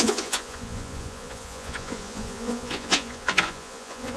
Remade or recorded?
remade